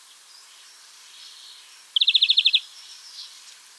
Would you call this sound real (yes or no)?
no